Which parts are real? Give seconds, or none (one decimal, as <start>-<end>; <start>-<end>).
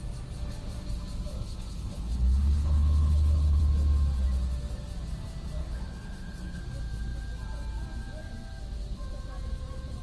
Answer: 0.0-1.3; 3.6-5.6; 6.6-10.0